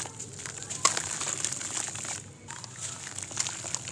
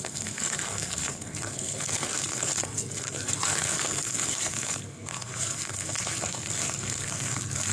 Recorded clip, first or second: first